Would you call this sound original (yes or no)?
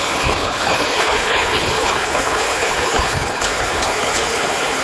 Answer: no